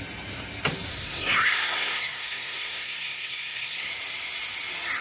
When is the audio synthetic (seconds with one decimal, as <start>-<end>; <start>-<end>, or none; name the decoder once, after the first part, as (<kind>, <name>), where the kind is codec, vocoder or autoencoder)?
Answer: 0.9-3.9 (codec, SNAC)